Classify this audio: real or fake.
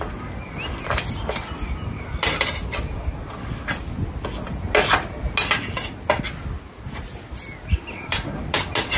real